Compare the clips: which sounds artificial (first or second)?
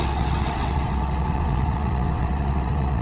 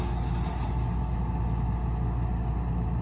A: first